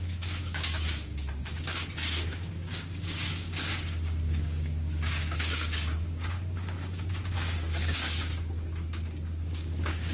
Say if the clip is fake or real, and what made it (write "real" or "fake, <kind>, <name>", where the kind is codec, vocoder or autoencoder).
fake, codec, DAC